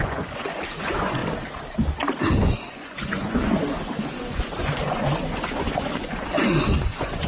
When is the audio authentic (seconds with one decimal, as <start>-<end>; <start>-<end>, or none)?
1.2-2.2